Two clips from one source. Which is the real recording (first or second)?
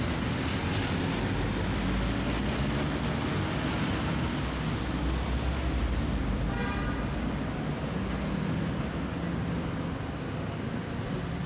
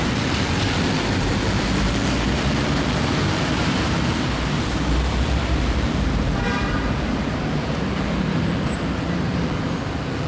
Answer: first